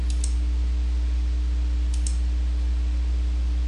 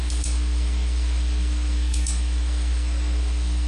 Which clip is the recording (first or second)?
first